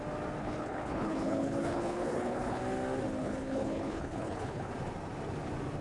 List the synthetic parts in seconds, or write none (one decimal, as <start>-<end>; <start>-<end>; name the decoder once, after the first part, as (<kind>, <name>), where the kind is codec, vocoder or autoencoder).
0.4-2.6 (codec, HILCodec); 3.2-4.7